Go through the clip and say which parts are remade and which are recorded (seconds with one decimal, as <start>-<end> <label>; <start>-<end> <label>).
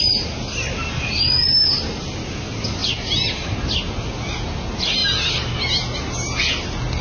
0.0-7.0 recorded